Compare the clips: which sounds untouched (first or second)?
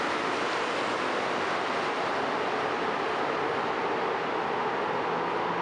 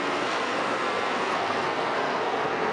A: first